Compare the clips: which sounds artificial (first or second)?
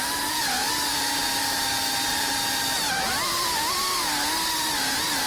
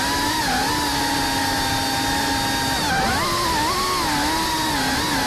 first